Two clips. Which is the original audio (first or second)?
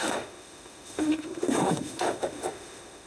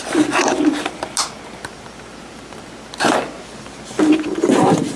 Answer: second